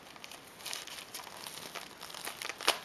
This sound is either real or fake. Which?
real